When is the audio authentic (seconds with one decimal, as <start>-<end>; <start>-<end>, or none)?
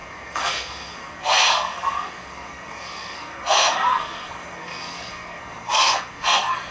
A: none